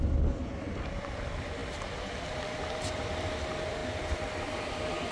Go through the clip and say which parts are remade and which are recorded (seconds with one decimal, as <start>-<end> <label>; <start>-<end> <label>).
0.0-3.8 remade; 3.8-5.1 recorded